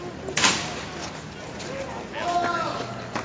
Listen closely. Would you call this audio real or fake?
real